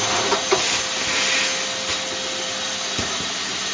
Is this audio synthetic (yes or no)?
no